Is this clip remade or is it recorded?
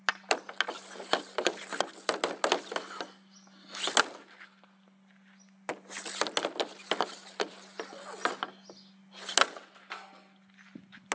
recorded